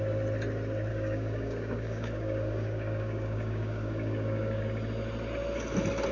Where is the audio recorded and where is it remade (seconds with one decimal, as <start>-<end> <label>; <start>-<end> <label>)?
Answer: 0.0-0.9 recorded; 0.9-4.6 remade; 4.6-6.1 recorded